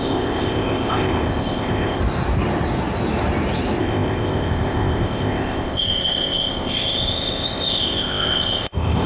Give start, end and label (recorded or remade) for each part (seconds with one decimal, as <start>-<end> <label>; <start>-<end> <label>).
0.0-2.0 remade; 2.0-3.8 recorded; 3.8-9.1 remade